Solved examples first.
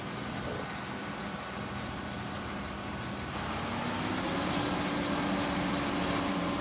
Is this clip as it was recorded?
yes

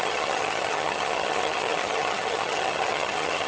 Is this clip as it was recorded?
no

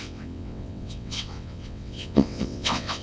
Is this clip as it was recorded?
no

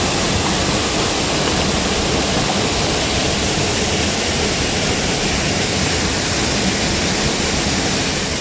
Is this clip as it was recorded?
yes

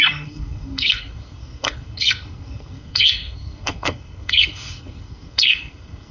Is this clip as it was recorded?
no